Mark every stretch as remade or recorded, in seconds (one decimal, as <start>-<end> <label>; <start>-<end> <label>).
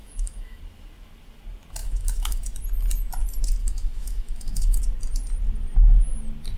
0.0-0.6 remade; 0.6-1.8 recorded; 1.8-2.4 remade; 2.4-3.6 recorded; 3.6-4.8 remade; 4.8-6.6 recorded